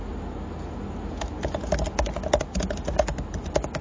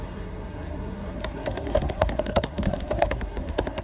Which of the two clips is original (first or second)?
first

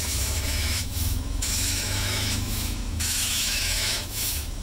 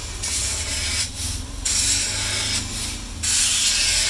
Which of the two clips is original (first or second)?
second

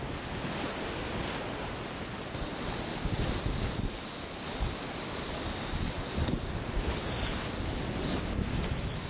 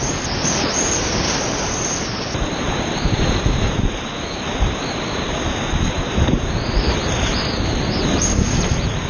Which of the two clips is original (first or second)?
first